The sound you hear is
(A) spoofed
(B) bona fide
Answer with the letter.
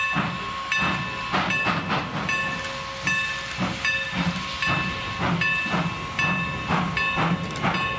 B